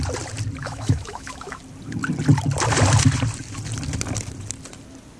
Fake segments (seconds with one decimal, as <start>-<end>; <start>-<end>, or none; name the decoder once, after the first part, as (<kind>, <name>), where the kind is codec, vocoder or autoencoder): 0.6-1.6 (autoencoder, DAC-VAE)